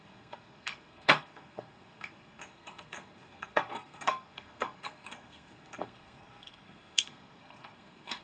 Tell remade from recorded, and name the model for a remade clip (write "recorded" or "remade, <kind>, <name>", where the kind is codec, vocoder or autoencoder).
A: remade, codec, SNAC